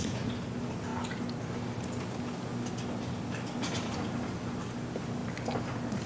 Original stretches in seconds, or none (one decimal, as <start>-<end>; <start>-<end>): 0.0-5.2